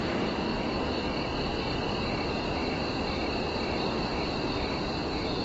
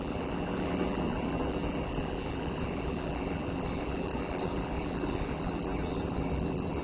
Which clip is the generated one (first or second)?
second